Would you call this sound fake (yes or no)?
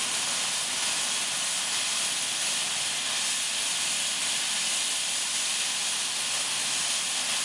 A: no